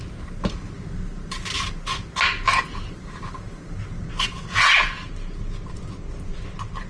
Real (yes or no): yes